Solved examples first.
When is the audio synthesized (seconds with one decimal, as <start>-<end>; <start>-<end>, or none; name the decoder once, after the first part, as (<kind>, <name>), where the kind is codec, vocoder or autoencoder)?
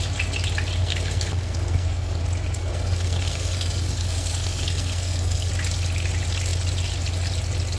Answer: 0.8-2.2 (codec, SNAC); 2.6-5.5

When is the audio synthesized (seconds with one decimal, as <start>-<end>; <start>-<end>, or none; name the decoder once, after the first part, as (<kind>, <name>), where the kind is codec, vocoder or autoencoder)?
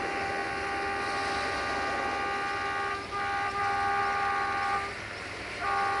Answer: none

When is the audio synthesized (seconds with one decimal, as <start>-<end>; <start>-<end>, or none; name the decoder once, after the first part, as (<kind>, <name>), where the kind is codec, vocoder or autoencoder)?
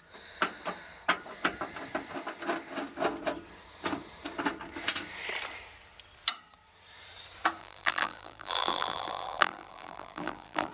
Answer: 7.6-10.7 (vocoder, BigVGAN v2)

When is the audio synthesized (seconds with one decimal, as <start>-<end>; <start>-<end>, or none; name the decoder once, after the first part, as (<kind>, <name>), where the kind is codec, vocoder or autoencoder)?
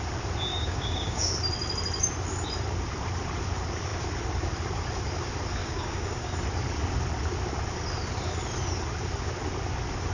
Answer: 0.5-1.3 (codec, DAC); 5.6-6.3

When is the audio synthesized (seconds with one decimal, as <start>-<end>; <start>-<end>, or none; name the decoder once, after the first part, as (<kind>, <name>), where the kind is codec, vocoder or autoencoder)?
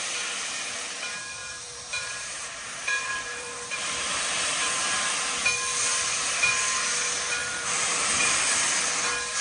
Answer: 1.4-4.8 (vocoder, BigVGAN v2); 7.4-8.4